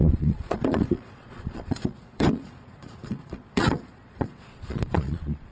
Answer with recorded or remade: remade